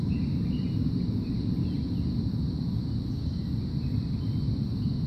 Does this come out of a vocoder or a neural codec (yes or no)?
no